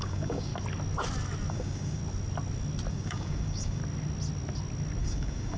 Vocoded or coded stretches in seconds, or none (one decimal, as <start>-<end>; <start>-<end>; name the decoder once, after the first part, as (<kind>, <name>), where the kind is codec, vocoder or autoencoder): 0.0-0.5 (codec, DAC); 1.5-2.0; 2.9-3.8; 5.0-5.6